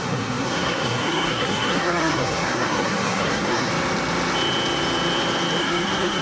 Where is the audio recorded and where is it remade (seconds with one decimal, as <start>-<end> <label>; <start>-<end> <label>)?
0.0-3.7 remade; 3.7-5.6 recorded; 5.6-6.2 remade